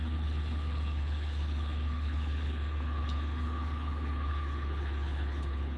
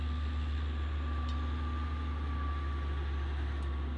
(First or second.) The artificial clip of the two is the first